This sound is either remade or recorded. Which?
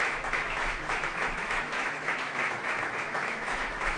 remade